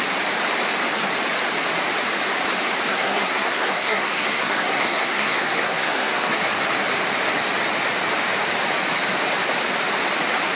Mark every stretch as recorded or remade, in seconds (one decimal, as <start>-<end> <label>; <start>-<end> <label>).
0.0-2.9 recorded; 2.9-6.4 remade; 6.4-10.5 recorded